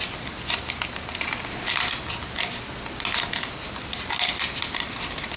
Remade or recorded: recorded